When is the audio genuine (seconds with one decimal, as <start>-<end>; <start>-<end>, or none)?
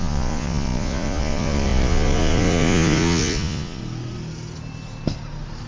3.8-5.7